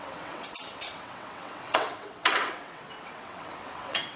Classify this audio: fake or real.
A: fake